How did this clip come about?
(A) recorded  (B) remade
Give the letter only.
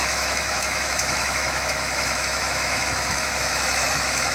B